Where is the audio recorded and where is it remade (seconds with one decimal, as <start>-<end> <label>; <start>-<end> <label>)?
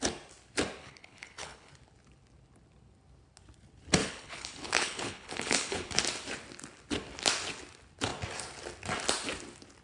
0.0-0.8 recorded; 0.8-1.7 remade; 1.7-4.0 recorded; 4.0-5.9 remade; 5.9-9.8 recorded